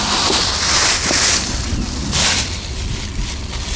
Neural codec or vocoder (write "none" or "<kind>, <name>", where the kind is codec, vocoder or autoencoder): none